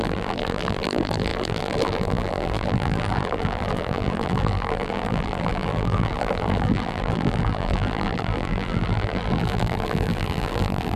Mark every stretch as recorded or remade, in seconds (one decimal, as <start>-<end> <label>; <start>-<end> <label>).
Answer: 0.0-11.0 remade